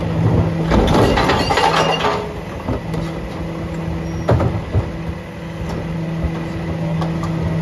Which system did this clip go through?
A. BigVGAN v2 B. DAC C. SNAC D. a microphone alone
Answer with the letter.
D